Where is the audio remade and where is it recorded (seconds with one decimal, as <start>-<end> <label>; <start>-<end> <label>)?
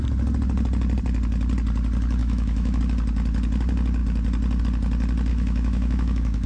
0.0-2.2 recorded; 2.2-2.8 remade; 2.8-5.3 recorded; 5.3-6.5 remade